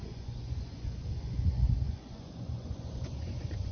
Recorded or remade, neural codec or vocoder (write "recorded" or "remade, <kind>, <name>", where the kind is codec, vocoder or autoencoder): remade, vocoder, Vocos